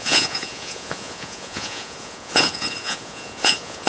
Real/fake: fake